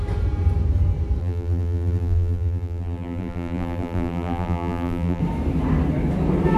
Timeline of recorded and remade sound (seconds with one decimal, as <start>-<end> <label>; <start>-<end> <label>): 0.0-1.2 recorded; 1.2-5.2 remade; 5.2-6.6 recorded